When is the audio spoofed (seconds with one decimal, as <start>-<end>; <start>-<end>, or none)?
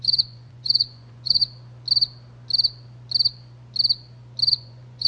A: 0.0-1.4; 4.5-5.1